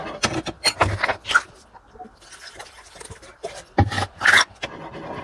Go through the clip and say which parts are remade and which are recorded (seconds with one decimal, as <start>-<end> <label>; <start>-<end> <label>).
0.0-1.1 recorded; 1.1-4.2 remade; 4.2-5.2 recorded